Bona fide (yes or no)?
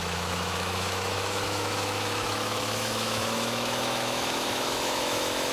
no